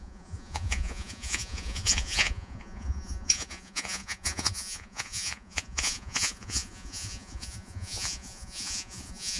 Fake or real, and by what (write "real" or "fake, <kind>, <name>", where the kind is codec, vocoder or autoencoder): fake, vocoder, Vocos